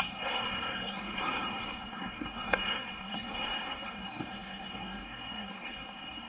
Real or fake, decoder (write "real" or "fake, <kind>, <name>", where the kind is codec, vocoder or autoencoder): fake, codec, SNAC